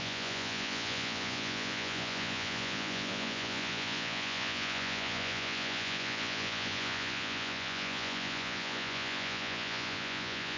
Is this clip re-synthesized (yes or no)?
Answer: yes